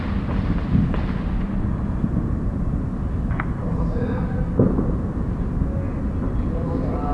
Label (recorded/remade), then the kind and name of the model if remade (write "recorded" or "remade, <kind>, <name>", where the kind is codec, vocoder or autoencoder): recorded